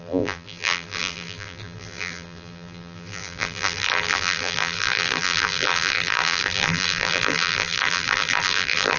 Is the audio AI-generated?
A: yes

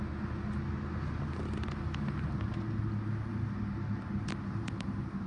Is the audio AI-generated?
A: no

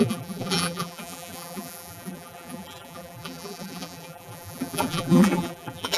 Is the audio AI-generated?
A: yes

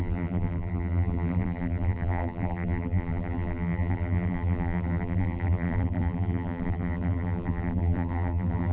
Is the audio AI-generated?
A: yes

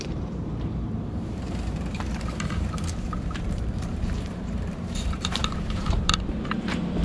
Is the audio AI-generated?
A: yes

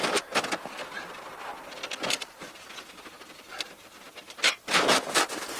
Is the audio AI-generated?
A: no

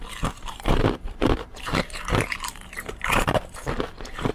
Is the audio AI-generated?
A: yes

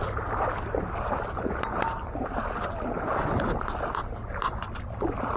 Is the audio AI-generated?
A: no